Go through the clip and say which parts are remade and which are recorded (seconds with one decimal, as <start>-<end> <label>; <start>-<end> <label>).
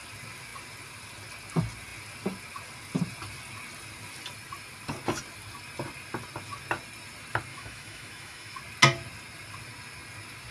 0.0-7.5 recorded; 7.5-8.6 remade; 8.6-10.5 recorded